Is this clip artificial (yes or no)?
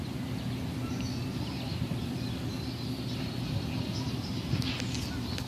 no